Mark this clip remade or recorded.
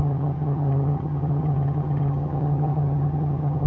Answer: remade